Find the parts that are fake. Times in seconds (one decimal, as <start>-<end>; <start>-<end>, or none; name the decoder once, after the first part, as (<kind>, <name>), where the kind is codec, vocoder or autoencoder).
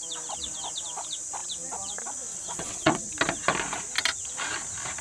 2.3-3.1 (vocoder, WaveNeXt)